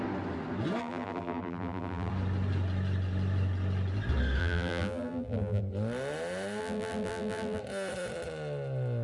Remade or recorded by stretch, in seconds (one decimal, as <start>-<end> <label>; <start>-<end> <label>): 0.0-0.8 recorded; 0.8-2.1 remade; 2.1-4.4 recorded; 4.4-5.6 remade; 5.6-6.6 recorded; 6.6-7.6 remade; 7.6-9.0 recorded